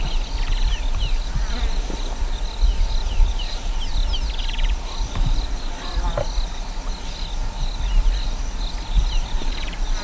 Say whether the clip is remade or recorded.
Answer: recorded